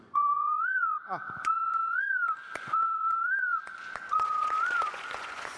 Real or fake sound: fake